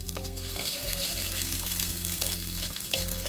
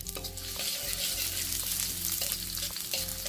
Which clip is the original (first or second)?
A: second